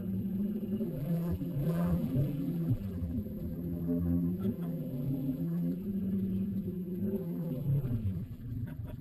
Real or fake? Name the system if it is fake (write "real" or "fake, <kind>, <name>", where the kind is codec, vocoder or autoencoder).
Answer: fake, vocoder, BigVGAN v2